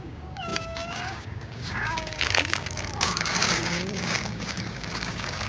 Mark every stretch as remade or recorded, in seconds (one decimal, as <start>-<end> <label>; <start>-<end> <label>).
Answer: 0.0-5.5 remade